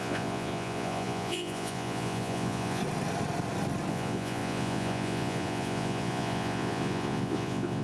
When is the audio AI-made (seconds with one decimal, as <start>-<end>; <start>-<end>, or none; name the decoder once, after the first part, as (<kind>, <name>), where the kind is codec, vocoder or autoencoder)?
0.0-2.8 (vocoder, Vocos); 3.9-7.8